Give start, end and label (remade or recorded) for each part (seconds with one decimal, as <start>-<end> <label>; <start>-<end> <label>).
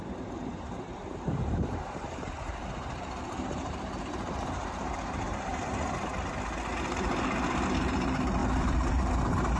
0.0-5.5 remade; 5.5-7.8 recorded; 7.8-9.6 remade